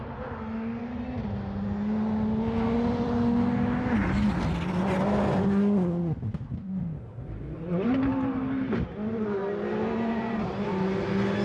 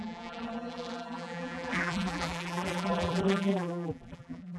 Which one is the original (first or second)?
first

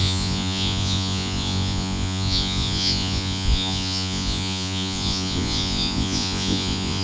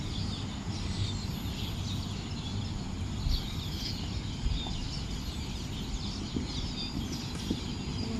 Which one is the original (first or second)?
second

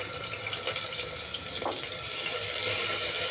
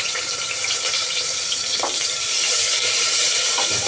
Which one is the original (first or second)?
first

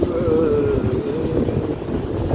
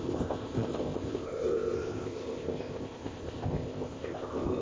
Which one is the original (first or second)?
first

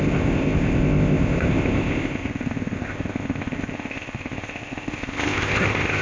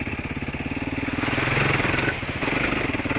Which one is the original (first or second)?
second